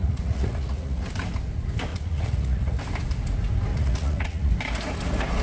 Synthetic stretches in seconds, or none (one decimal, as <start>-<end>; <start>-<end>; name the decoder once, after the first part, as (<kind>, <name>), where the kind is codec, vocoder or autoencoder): 0.0-1.0 (vocoder, Vocos); 1.9-2.8; 3.7-4.5